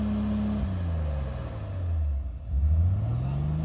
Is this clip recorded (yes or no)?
yes